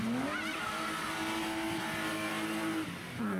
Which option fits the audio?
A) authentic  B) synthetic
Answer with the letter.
A